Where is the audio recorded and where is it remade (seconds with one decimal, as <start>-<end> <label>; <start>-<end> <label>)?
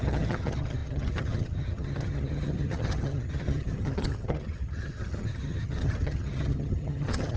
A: 0.0-7.4 remade